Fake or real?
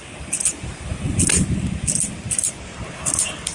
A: real